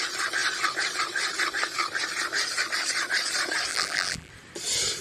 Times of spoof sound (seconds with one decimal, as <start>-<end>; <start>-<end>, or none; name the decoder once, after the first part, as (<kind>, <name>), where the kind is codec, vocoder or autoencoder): 3.7-4.3 (vocoder, BigVGAN v2)